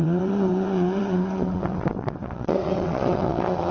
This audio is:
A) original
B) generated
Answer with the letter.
B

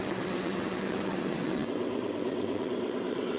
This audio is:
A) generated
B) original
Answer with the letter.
A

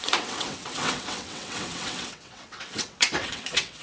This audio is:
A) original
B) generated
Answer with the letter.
B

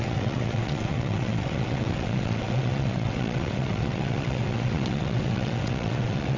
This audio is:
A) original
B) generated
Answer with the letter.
B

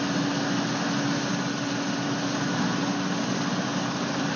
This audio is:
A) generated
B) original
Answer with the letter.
B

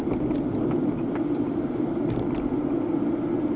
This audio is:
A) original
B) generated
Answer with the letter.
A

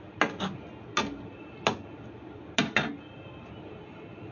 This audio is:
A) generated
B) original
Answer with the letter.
B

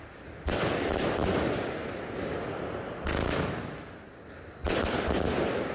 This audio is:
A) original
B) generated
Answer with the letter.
A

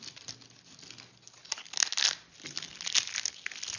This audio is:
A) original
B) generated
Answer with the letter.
A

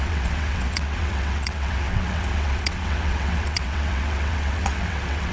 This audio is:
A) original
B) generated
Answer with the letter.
B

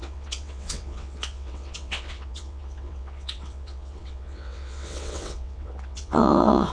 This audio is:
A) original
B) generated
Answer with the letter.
B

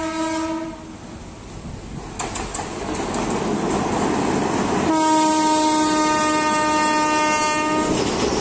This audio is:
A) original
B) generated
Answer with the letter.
A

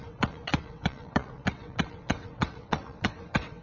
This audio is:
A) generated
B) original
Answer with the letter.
A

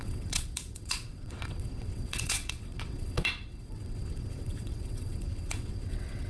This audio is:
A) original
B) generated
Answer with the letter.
B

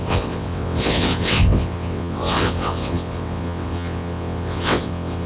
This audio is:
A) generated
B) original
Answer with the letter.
A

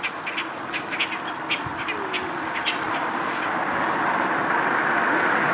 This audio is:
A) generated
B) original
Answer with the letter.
B